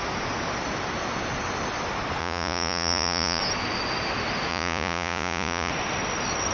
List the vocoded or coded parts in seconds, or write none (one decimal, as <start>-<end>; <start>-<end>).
2.2-3.4; 4.5-5.7